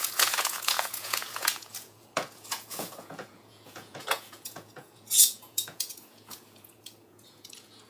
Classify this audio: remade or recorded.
remade